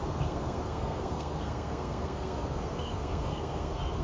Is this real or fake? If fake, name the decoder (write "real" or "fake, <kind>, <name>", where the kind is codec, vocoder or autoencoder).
fake, codec, SNAC